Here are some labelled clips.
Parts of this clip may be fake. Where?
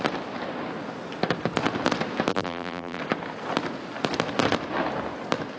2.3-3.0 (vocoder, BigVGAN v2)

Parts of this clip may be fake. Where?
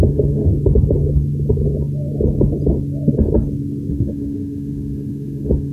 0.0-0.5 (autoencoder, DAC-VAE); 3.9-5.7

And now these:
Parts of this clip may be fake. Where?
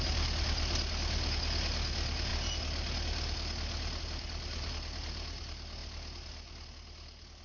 none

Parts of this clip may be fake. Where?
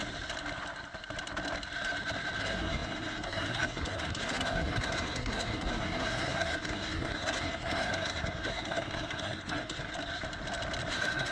2.4-9.9 (codec, SNAC); 10.9-11.3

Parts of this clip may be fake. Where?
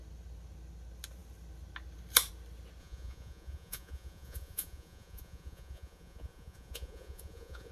2.8-7.7 (vocoder, Vocos)